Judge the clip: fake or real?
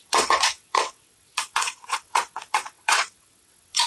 fake